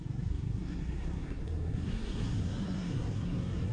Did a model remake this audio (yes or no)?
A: yes